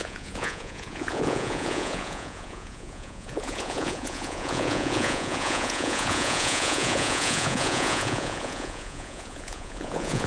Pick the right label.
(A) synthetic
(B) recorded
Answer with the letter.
A